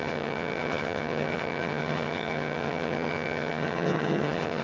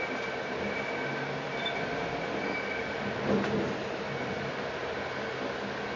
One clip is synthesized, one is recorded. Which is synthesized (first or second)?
first